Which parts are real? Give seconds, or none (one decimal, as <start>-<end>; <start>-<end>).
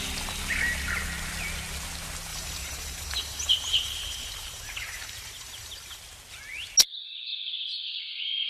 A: 0.0-2.3; 6.0-8.5